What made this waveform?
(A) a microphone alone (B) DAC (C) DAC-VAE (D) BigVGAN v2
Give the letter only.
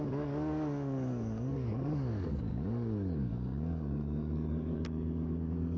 B